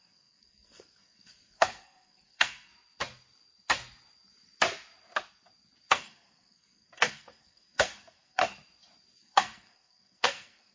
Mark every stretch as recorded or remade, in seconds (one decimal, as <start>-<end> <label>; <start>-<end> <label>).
0.0-2.7 remade; 2.7-5.9 recorded; 5.9-8.4 remade; 8.4-9.2 recorded; 9.2-10.7 remade